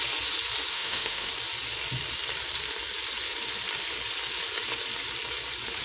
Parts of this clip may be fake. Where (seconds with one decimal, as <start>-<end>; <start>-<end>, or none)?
0.7-1.3

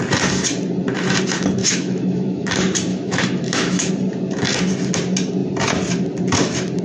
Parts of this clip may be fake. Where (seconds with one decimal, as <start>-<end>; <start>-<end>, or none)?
1.6-2.5; 2.9-3.9

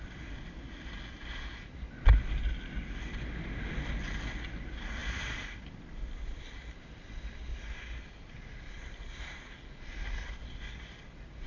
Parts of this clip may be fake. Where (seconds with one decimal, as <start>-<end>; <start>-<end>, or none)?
none

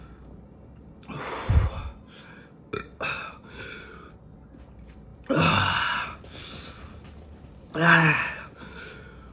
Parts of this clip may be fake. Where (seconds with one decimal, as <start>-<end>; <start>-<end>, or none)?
none

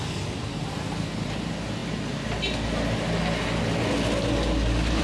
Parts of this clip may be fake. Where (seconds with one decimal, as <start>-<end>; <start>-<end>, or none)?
none